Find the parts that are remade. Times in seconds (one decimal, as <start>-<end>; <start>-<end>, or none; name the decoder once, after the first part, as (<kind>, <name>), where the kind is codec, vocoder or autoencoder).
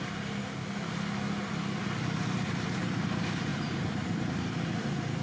3.5-4.1 (vocoder, BigVGAN v2)